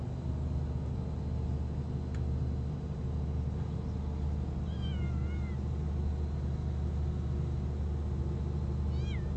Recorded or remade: recorded